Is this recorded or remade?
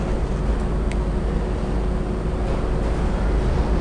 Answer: recorded